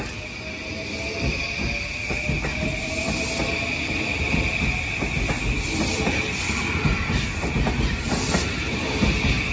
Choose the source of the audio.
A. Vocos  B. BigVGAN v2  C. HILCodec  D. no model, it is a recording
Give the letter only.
D